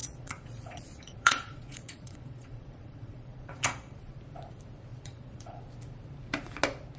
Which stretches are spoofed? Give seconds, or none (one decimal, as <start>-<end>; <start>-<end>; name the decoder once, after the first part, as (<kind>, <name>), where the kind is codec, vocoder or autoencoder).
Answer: 0.0-4.2 (vocoder, Vocos); 4.9-5.6